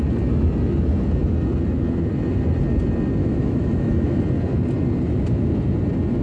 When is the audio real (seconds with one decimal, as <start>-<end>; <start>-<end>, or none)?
0.0-3.2; 4.2-6.2